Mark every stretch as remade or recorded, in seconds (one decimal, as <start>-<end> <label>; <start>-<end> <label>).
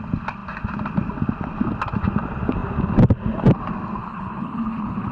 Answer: 0.0-4.0 recorded; 4.0-5.1 remade